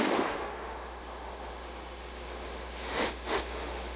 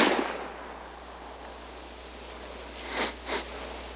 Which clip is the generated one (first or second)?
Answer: first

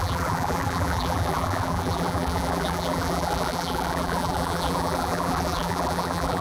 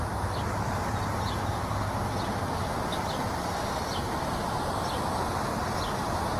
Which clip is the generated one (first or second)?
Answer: first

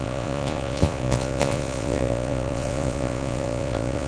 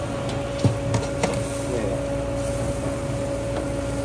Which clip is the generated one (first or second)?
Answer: first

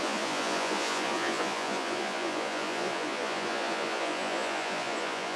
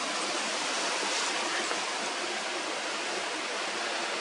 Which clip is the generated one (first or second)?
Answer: first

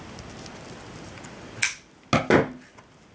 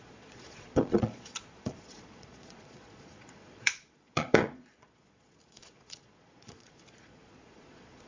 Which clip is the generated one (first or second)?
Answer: second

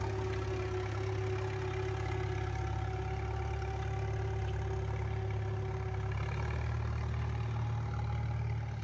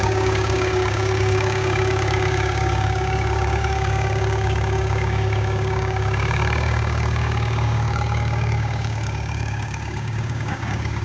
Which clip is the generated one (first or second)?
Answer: second